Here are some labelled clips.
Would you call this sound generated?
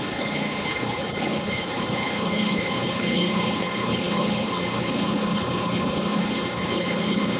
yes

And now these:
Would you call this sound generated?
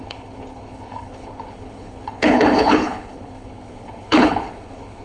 yes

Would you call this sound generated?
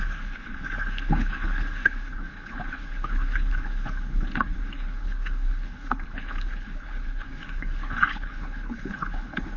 yes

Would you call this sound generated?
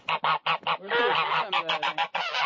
no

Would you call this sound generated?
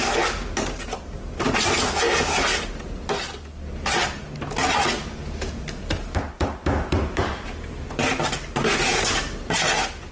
no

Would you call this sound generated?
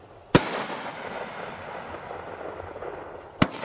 no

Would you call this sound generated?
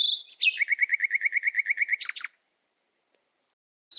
no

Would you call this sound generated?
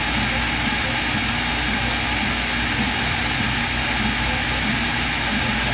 no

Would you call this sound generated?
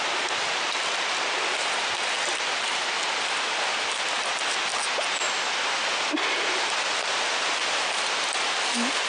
no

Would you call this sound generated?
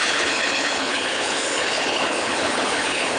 yes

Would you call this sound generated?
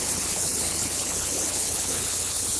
yes